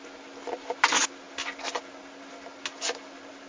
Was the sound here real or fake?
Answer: real